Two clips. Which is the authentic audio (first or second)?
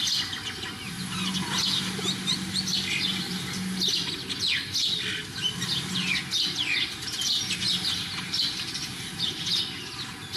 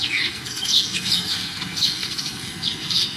first